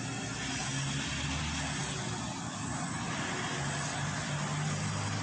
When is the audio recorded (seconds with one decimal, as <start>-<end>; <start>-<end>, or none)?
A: 0.0-5.2